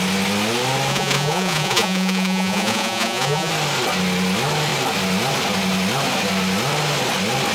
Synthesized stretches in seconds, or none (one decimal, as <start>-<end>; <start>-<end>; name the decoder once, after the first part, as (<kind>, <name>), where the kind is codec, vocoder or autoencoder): 0.9-3.5 (vocoder, Vocos)